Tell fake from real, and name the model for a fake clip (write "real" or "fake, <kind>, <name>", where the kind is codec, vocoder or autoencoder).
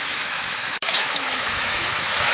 fake, autoencoder, DAC-VAE